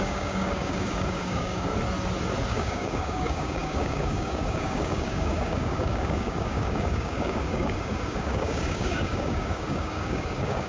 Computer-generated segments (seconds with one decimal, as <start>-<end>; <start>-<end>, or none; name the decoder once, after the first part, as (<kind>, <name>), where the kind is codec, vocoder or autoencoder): 0.0-1.7 (codec, DAC); 2.5-10.7